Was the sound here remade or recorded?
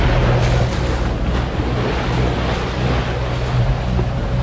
recorded